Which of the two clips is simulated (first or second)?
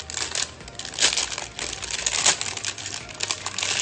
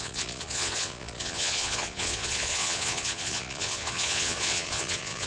second